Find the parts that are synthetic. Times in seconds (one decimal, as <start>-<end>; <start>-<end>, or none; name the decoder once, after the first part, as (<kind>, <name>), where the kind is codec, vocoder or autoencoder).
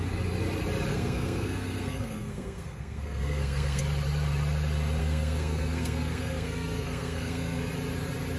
0.9-3.8 (codec, SNAC); 5.0-7.7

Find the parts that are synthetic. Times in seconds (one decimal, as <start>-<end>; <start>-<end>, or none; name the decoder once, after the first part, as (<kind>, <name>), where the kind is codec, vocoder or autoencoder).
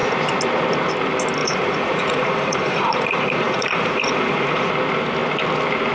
1.4-4.7 (vocoder, Vocos)